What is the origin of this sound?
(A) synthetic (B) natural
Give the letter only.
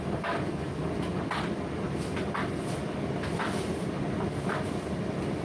B